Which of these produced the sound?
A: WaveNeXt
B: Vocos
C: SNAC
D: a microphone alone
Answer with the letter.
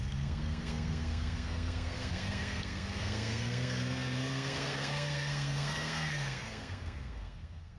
C